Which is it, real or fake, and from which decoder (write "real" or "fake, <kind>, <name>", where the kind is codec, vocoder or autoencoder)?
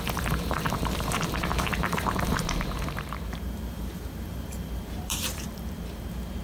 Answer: fake, vocoder, BigVGAN v2